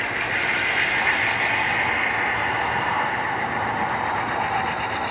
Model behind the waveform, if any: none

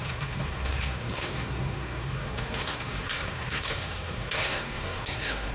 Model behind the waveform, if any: codec, SNAC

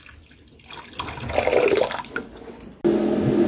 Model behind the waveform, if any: none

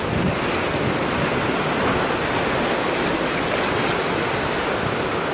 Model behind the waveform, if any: none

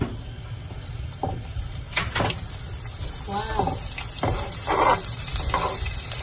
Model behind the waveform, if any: none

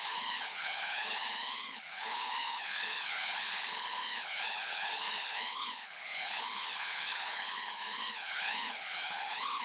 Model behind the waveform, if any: codec, HILCodec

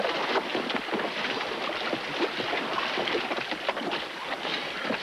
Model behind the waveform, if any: none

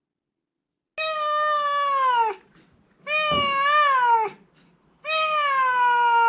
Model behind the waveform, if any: none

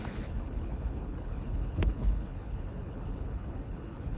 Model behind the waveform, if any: codec, HILCodec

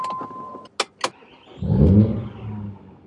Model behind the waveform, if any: none